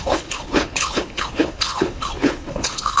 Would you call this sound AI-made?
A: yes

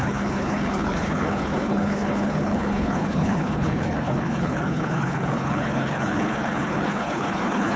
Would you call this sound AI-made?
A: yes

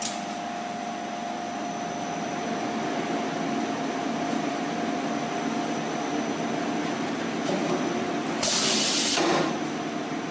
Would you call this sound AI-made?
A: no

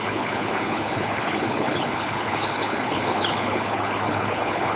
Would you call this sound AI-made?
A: yes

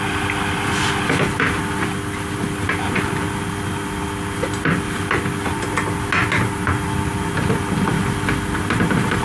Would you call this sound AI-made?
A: no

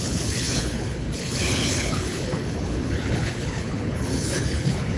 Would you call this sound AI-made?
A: yes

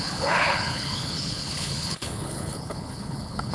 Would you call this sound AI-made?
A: yes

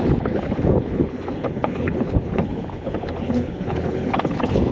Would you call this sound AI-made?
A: yes